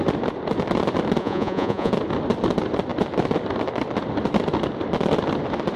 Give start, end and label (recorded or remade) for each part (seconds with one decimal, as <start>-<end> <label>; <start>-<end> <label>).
0.0-1.2 recorded; 1.2-1.9 remade; 1.9-5.8 recorded